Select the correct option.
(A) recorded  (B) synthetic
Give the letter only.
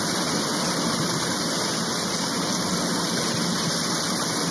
A